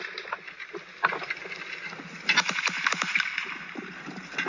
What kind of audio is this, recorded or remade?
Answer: recorded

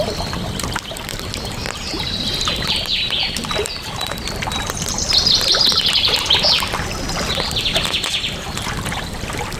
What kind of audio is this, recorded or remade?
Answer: remade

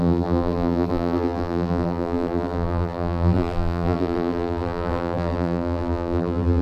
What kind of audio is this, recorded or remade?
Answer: remade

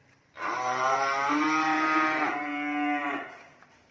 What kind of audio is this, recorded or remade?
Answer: remade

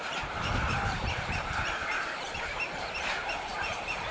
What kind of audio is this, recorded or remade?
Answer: remade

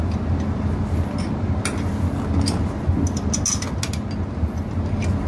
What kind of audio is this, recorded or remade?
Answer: recorded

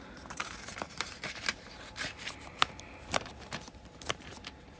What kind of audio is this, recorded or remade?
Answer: remade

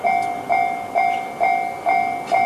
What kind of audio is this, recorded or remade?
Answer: recorded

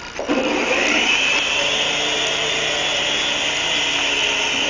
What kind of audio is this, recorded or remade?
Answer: recorded